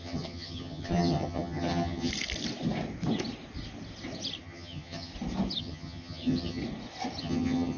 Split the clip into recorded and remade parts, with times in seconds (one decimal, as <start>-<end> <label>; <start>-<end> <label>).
0.0-2.1 remade; 2.1-4.4 recorded; 4.4-5.1 remade; 5.1-5.6 recorded; 5.6-6.6 remade; 6.6-7.2 recorded; 7.2-7.8 remade